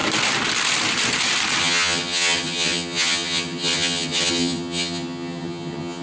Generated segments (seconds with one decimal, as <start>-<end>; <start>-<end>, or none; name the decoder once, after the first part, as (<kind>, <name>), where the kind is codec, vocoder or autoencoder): 1.6-6.0 (vocoder, HiFi-GAN)